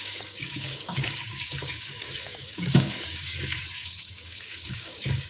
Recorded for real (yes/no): no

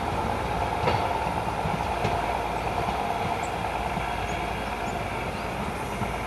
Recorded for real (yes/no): yes